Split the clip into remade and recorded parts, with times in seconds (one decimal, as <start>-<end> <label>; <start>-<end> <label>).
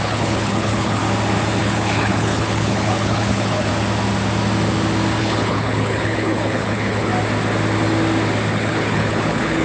0.0-1.0 remade; 1.0-1.6 recorded; 1.6-3.7 remade; 3.7-5.2 recorded; 5.2-7.1 remade; 7.1-8.5 recorded; 8.5-9.6 remade